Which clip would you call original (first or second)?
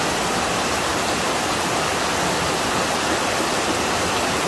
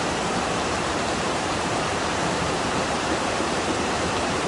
first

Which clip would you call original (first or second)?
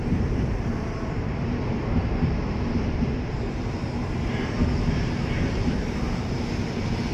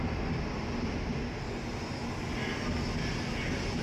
second